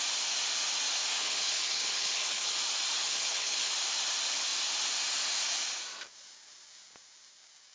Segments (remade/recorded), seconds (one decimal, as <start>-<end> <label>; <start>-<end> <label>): 0.0-1.2 recorded; 1.2-2.6 remade; 2.6-3.0 recorded; 3.0-3.7 remade; 3.7-7.7 recorded

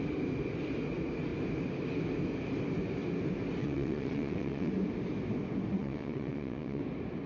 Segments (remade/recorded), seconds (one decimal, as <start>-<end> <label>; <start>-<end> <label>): 0.0-3.6 recorded; 3.6-4.7 remade; 4.7-5.7 recorded; 5.7-6.8 remade; 6.8-7.3 recorded

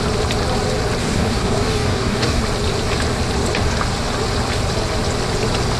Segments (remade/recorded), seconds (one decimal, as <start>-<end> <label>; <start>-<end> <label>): 0.0-1.0 recorded; 1.0-2.4 remade; 2.4-5.8 recorded

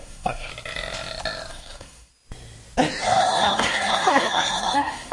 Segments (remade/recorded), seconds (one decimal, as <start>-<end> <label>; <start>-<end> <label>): 0.0-0.5 remade; 0.5-1.5 recorded; 1.5-2.1 remade; 2.1-3.0 recorded; 3.0-5.1 remade

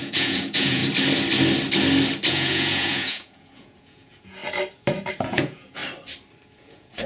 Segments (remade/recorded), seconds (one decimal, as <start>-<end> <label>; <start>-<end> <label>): 0.0-0.8 remade; 0.8-2.3 recorded; 2.3-4.4 remade; 4.4-5.1 recorded; 5.1-5.8 remade; 5.8-6.5 recorded; 6.5-7.1 remade

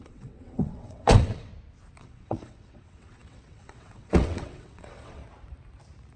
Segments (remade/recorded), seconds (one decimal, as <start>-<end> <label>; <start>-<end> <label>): 0.0-1.5 remade; 1.5-2.0 recorded; 2.0-5.2 remade; 5.2-6.2 recorded

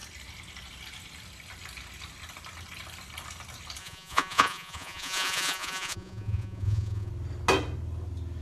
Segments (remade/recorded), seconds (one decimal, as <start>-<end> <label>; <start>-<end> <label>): 0.0-3.8 recorded; 3.8-7.1 remade; 7.1-8.4 recorded

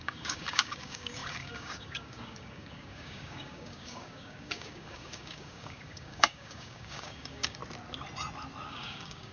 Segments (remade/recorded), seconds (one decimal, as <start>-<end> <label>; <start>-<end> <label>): 0.0-7.6 remade; 7.6-8.7 recorded; 8.7-9.3 remade